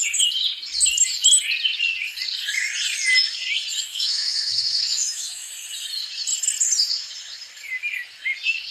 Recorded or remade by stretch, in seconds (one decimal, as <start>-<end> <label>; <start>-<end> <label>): 0.0-3.9 recorded; 3.9-5.5 remade; 5.5-8.7 recorded